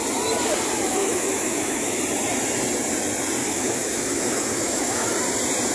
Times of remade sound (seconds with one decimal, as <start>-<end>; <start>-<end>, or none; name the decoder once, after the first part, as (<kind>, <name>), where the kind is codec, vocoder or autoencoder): 0.9-2.0 (autoencoder, DAC-VAE); 3.4-5.1